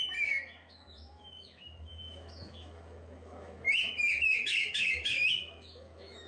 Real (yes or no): no